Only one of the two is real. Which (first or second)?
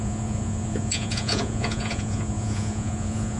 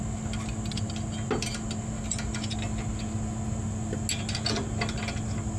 second